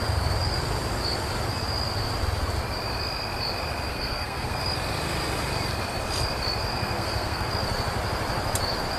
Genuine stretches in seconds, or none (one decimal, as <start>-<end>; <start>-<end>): 0.0-3.9; 4.6-6.7; 7.5-9.0